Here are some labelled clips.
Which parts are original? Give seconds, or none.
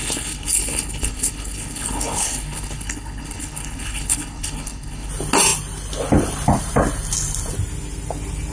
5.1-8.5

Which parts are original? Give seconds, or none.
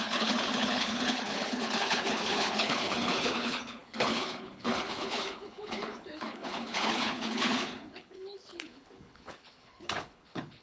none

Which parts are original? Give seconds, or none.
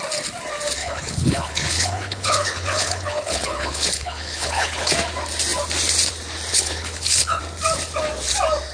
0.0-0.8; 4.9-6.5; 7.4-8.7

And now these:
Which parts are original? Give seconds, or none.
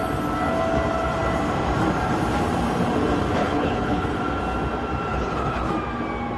0.0-3.4; 4.2-5.1; 5.7-6.4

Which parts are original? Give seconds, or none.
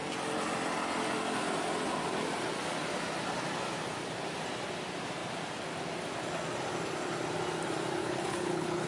0.0-8.0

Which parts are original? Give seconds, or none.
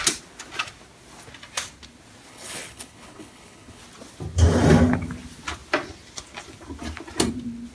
0.0-2.3; 3.8-7.7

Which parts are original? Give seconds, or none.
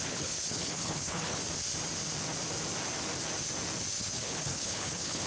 1.4-4.0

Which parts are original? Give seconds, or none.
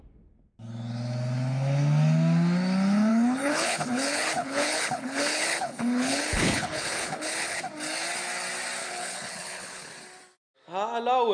0.0-3.1; 7.6-8.8; 9.9-11.3